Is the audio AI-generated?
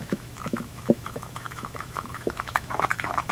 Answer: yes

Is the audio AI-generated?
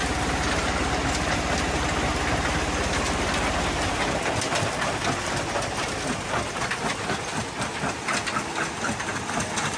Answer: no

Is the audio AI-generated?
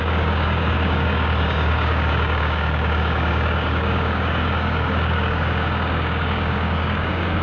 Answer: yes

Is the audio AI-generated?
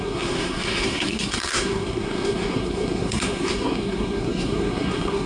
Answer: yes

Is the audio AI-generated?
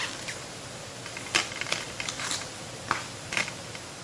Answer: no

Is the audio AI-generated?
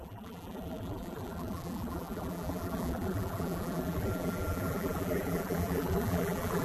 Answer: yes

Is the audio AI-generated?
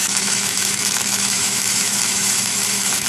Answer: yes